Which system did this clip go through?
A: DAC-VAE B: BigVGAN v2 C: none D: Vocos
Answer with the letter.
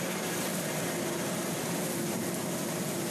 C